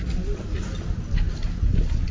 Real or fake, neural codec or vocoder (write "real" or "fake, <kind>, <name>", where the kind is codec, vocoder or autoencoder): real